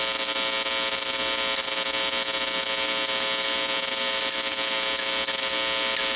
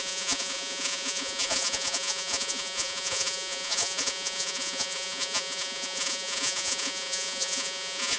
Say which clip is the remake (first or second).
second